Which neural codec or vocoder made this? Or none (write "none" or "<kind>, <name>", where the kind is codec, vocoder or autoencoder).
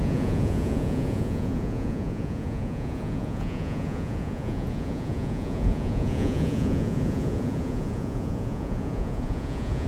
vocoder, Vocos